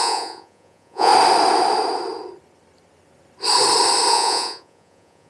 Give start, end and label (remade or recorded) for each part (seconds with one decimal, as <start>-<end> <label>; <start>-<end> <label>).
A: 0.0-1.1 remade; 1.1-4.1 recorded; 4.1-5.3 remade